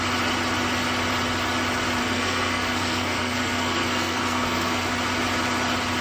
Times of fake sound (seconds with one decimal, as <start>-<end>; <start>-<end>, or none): 2.0-4.9